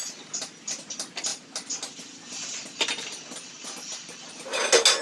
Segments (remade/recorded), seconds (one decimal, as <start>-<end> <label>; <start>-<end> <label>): 0.0-5.0 recorded